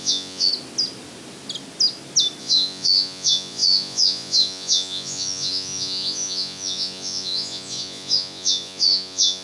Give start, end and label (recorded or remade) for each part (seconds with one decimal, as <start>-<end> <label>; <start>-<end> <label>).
0.0-0.5 remade; 0.5-2.4 recorded; 2.4-9.4 remade